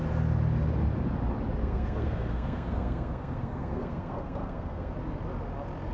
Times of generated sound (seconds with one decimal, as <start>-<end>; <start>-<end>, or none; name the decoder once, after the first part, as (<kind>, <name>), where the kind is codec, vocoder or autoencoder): 1.6-4.9 (codec, SNAC)